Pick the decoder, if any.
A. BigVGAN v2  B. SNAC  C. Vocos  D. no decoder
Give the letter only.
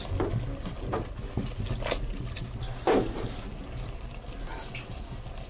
D